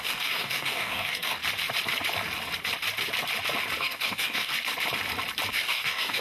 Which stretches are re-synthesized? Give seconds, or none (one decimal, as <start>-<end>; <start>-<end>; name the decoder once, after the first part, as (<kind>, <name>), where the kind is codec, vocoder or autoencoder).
0.0-1.4 (codec, DAC); 3.8-4.5; 5.5-6.2

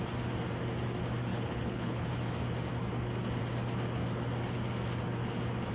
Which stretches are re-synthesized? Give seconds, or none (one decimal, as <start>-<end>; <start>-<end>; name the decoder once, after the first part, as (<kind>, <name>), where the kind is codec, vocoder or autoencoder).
1.3-2.1 (codec, HILCodec)